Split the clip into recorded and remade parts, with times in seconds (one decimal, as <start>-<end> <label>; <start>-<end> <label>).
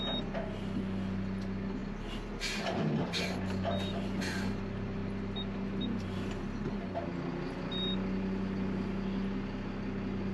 0.0-10.3 recorded